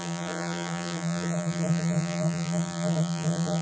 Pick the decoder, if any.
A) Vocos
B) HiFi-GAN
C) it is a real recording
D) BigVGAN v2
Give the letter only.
D